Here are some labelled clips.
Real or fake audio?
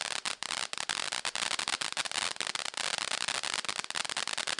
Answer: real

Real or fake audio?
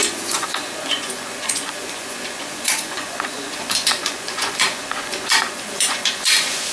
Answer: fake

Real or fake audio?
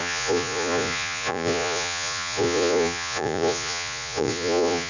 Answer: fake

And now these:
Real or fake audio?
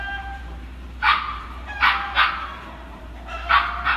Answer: fake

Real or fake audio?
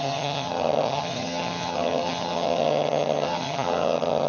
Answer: fake